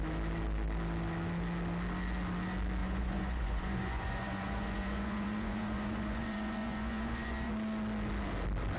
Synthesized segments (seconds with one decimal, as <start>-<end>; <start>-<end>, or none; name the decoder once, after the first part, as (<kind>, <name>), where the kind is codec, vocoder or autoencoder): 2.8-7.5 (vocoder, Vocos)